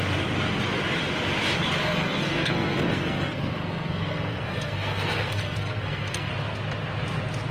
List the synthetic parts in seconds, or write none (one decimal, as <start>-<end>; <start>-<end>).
1.8-6.3